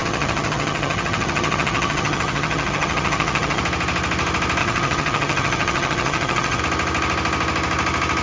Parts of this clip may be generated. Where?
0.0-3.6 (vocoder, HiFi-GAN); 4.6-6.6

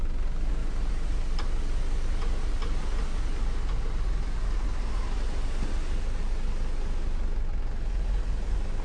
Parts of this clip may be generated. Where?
none

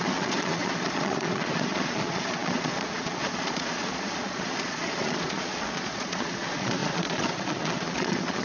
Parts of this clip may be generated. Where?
0.0-8.4 (vocoder, Vocos)

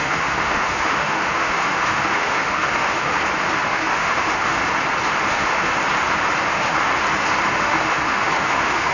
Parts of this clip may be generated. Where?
0.0-3.1 (autoencoder, DAC-VAE); 3.7-4.6; 5.3-5.7; 6.5-6.9; 7.5-8.9

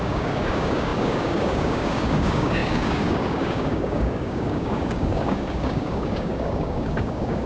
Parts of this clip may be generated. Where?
0.0-7.5 (codec, DAC)